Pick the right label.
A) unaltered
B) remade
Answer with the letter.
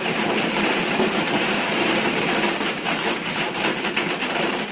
B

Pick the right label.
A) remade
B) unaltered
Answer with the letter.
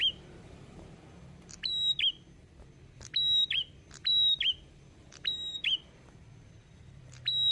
B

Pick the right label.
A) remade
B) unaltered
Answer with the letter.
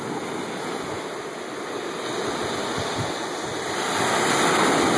B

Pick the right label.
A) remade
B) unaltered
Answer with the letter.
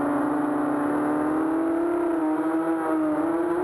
B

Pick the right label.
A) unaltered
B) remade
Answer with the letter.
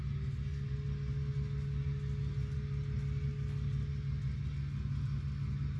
A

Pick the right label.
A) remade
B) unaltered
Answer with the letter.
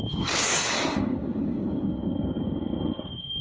A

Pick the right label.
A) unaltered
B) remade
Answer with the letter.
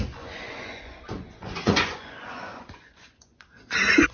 B